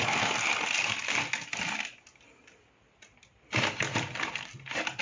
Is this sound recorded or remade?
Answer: recorded